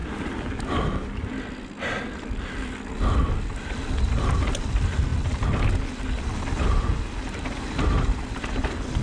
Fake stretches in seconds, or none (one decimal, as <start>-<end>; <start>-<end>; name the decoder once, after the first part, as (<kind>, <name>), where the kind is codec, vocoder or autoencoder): none